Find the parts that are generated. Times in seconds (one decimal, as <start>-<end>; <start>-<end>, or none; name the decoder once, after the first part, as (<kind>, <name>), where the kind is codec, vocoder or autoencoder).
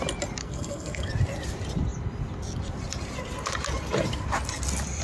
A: 0.4-1.1 (codec, SNAC)